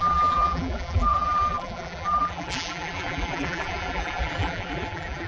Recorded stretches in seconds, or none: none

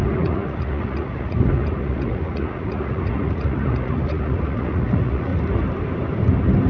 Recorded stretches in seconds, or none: 5.3-6.7

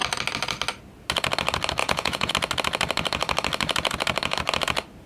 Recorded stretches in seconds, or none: 0.0-1.8; 2.3-5.1

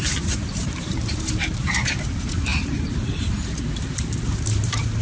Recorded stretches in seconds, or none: 0.0-0.5